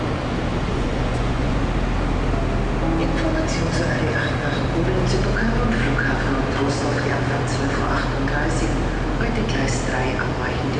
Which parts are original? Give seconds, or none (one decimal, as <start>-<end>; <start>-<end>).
0.0-0.7; 1.6-10.8